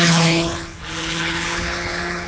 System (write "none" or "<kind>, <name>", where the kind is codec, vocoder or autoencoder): codec, HILCodec